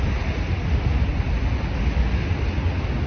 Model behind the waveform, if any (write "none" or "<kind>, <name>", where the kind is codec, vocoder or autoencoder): none